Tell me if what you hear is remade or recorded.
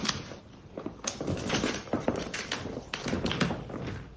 remade